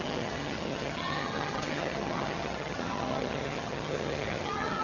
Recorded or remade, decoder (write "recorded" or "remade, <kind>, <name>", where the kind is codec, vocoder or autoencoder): remade, vocoder, HiFi-GAN